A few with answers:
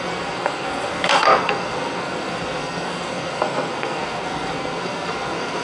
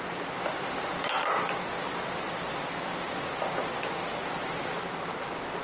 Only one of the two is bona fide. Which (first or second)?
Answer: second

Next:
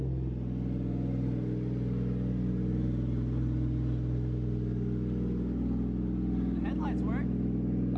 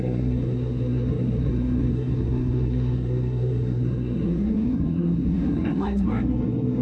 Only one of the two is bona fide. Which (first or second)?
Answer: first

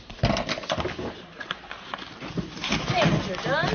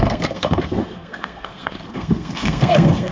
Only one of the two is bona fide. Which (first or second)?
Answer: first